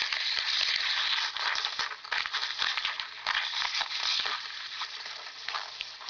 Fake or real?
real